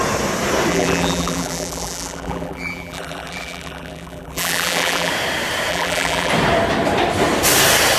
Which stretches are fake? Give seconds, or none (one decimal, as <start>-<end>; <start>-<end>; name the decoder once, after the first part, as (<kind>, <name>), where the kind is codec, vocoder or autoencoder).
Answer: 0.7-5.1 (vocoder, BigVGAN v2); 5.7-6.3

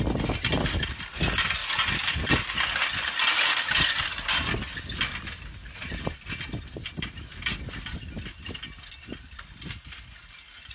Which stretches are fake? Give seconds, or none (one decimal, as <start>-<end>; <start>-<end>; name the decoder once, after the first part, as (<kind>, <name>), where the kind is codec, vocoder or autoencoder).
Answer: none